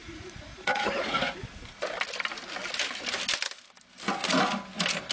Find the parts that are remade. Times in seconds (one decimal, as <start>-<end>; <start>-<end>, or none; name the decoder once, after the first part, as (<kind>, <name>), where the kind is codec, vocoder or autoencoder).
0.0-1.3 (vocoder, Vocos)